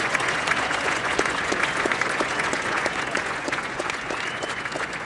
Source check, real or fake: fake